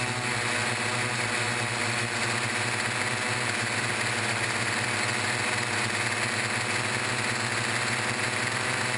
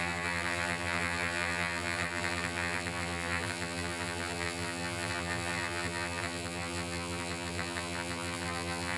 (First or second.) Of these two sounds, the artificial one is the second